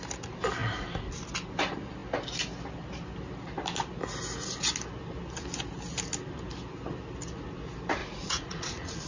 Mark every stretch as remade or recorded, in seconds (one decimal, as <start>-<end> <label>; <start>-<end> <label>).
0.0-8.0 recorded; 8.0-9.1 remade